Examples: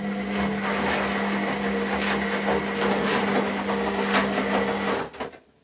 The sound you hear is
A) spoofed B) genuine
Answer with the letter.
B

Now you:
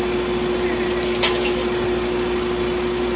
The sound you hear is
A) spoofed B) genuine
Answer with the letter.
B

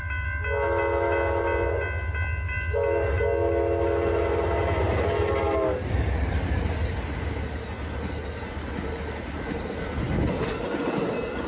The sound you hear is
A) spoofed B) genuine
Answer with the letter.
B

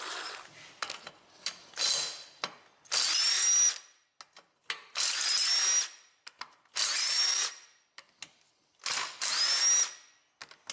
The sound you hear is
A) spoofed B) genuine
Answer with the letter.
B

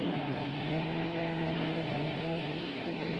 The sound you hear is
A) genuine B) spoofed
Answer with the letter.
B